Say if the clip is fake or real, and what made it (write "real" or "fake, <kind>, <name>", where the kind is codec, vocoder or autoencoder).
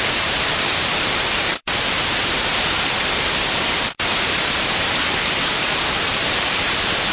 fake, vocoder, BigVGAN v2